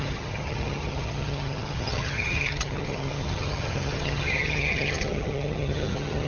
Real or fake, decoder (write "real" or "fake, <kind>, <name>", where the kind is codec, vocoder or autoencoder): fake, vocoder, HiFi-GAN